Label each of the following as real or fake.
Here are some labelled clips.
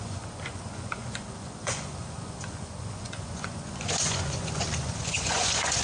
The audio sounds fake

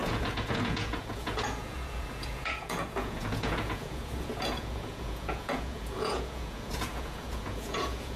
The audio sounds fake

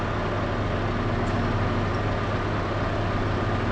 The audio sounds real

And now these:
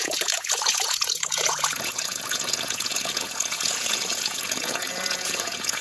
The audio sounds fake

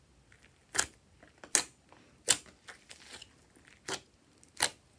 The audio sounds real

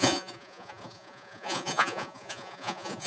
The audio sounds fake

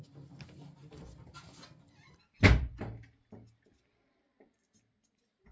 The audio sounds real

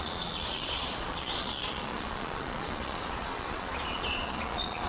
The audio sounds fake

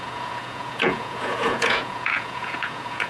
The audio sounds fake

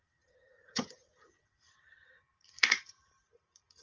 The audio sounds fake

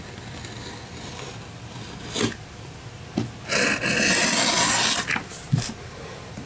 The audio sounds real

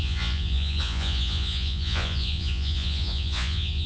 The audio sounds fake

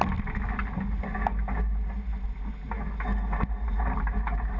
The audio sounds real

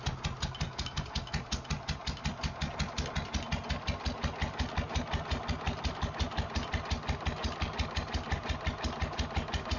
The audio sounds real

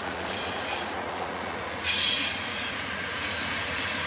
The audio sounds fake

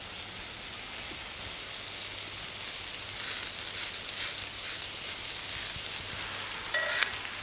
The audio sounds real